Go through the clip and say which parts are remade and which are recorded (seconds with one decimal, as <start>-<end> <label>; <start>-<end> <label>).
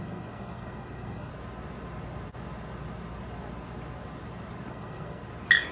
0.0-1.3 remade; 1.3-4.7 recorded; 4.7-5.2 remade; 5.2-5.7 recorded